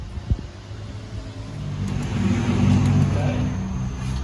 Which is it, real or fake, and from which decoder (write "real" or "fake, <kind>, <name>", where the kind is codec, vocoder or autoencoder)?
real